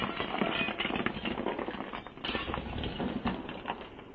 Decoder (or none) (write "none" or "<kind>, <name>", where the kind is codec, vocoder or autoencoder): none